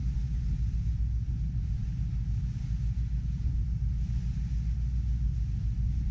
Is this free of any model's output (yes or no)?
yes